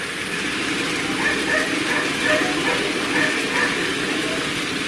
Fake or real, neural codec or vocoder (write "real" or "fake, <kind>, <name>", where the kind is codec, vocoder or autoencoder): fake, vocoder, BigVGAN v2